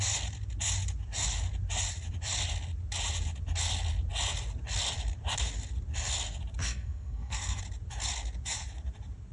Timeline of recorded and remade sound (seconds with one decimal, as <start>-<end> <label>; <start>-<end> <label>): 0.0-6.6 recorded; 6.6-7.6 remade; 7.6-9.3 recorded